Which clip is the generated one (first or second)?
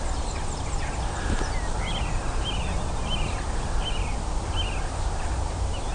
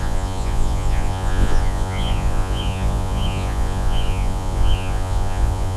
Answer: second